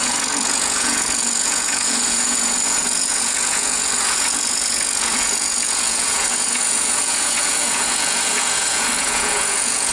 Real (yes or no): no